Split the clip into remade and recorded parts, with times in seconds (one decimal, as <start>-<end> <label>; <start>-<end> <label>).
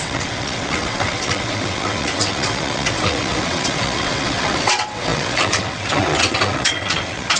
0.0-7.4 remade